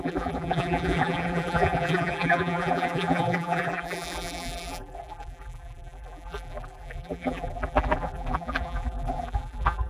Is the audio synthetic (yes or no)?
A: yes